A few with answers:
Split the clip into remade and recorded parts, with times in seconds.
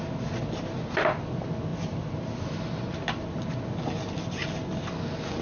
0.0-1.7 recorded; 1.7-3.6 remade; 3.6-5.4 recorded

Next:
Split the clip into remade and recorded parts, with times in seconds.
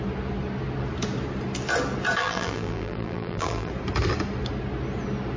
0.0-2.2 recorded; 2.2-3.7 remade; 3.7-5.4 recorded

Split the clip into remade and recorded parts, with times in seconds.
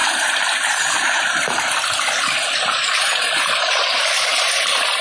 0.0-5.0 remade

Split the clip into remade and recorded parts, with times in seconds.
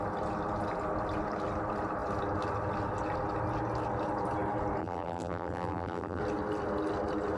0.0-4.8 recorded; 4.8-6.2 remade; 6.2-7.4 recorded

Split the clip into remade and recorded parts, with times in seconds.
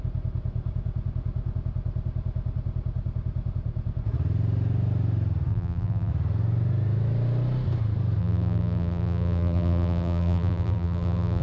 0.0-5.5 recorded; 5.5-6.1 remade; 6.1-8.2 recorded; 8.2-11.4 remade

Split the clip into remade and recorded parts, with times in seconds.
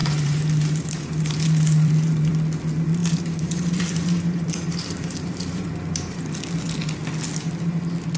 0.0-2.3 remade; 2.3-3.0 recorded; 3.0-6.2 remade; 6.2-8.2 recorded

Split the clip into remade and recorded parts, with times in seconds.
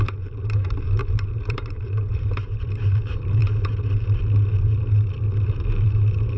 0.0-3.4 remade; 3.4-5.5 recorded; 5.5-6.4 remade